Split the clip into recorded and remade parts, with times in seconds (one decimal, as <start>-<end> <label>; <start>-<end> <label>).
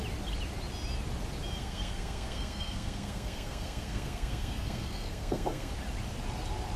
0.0-1.6 recorded; 1.6-5.7 remade; 5.7-6.8 recorded